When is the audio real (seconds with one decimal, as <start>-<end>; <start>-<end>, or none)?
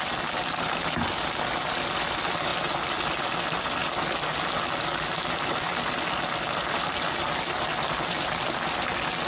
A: 0.0-9.3